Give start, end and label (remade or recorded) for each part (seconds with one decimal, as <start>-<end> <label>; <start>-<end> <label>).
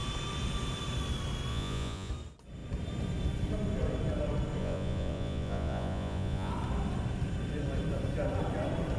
0.0-1.5 recorded; 1.5-2.1 remade; 2.1-4.6 recorded; 4.6-6.5 remade; 6.5-9.0 recorded